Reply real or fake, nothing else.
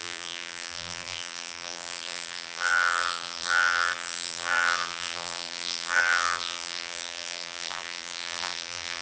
fake